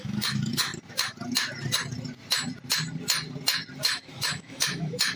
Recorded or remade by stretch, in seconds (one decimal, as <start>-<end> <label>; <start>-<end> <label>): 0.0-0.7 remade; 0.7-3.8 recorded; 3.8-5.2 remade